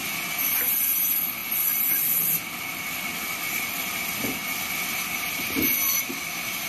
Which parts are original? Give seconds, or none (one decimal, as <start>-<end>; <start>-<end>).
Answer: 0.0-6.7